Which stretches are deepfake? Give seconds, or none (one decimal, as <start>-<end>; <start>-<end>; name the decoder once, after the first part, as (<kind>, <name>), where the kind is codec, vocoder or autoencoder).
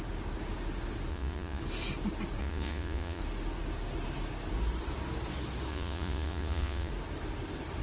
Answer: 1.1-1.6 (vocoder, Vocos); 2.4-3.2; 5.7-6.9